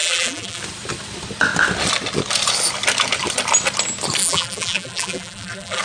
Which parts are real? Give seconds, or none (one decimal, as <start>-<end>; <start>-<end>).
0.6-4.2